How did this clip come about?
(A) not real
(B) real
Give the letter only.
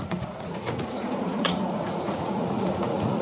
A